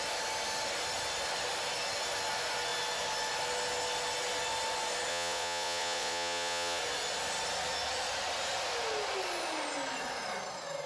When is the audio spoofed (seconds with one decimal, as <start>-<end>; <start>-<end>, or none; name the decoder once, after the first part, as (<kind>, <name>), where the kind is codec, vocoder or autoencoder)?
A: 5.1-6.8 (vocoder, Vocos)